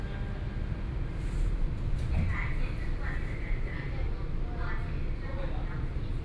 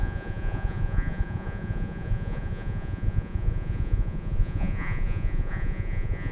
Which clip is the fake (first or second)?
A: second